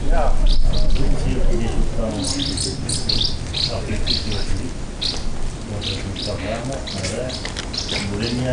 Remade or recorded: recorded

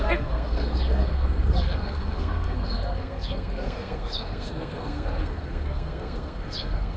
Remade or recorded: remade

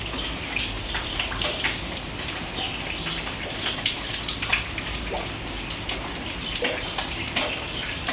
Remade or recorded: recorded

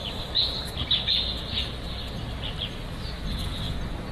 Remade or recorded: recorded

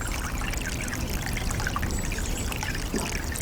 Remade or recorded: recorded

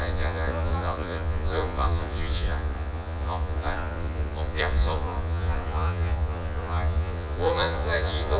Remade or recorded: remade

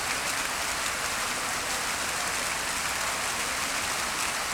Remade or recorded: recorded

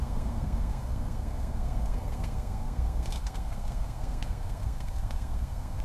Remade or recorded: remade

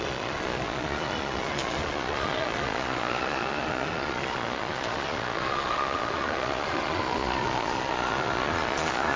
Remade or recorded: remade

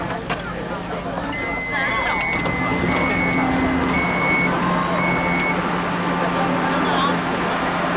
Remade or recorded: recorded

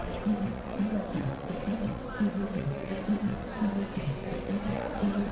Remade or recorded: remade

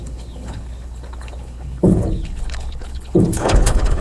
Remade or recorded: remade